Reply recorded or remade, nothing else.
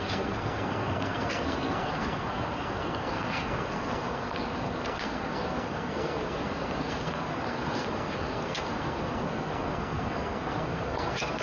remade